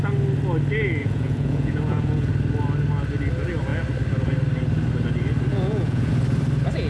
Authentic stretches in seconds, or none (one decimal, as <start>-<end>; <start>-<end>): 0.0-1.0; 2.3-5.5; 6.1-6.9